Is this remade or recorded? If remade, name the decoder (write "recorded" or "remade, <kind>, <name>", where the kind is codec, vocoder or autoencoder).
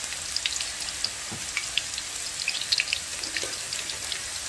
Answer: recorded